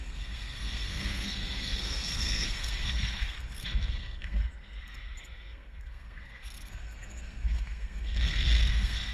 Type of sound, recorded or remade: remade